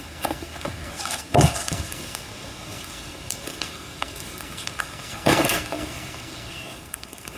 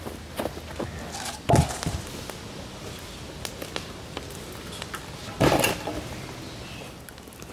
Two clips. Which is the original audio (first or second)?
second